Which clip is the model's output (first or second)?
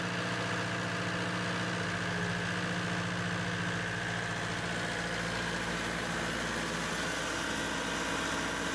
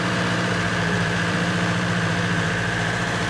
second